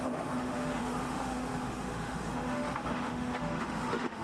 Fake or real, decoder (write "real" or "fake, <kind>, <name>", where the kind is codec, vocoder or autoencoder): fake, autoencoder, DAC-VAE